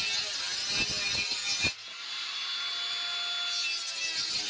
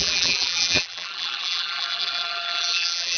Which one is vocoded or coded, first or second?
second